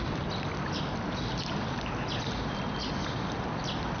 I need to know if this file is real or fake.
real